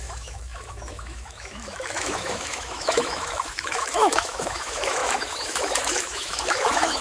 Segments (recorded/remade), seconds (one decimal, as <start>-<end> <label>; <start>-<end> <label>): 0.0-7.0 remade